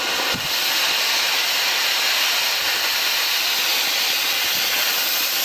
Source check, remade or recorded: recorded